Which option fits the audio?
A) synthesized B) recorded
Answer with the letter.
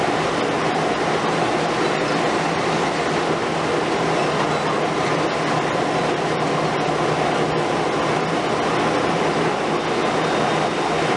B